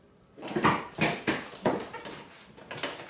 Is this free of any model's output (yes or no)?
yes